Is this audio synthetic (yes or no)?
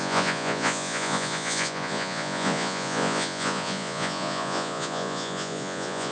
yes